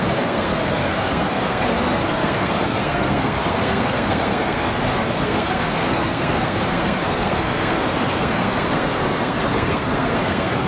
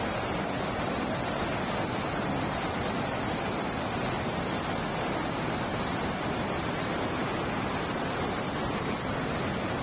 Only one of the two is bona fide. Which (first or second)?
second